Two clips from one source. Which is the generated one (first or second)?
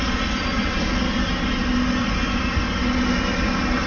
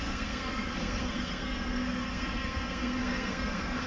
second